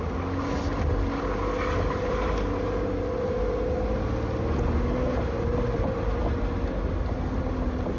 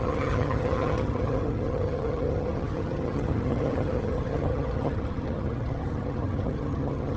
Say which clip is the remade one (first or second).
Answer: second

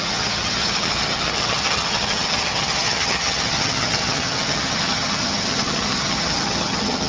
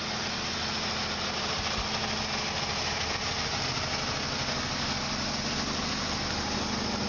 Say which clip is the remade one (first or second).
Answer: first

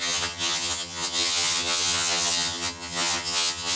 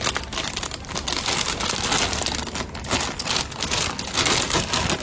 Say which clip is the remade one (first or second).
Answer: first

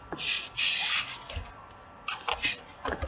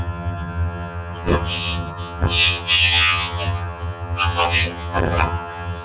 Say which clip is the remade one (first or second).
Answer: second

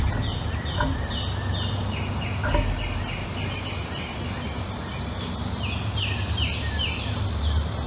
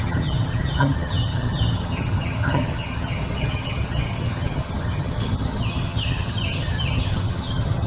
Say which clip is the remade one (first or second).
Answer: second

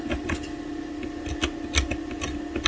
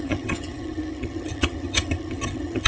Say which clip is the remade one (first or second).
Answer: second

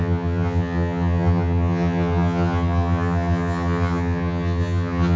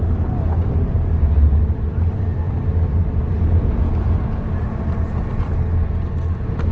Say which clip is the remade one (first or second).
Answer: first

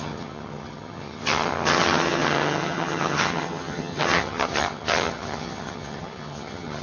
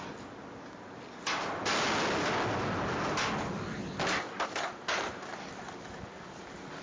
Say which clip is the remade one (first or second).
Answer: first